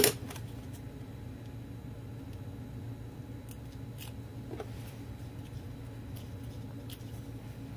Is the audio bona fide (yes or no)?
yes